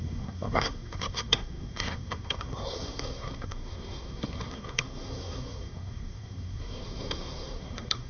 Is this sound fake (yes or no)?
yes